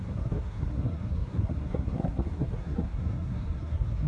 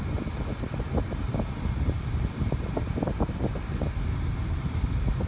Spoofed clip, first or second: first